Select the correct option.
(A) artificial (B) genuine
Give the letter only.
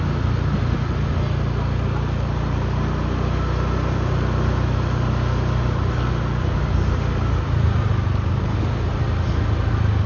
B